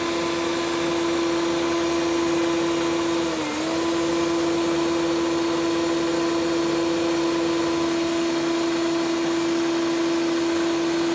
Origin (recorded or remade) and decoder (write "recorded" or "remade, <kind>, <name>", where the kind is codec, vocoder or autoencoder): recorded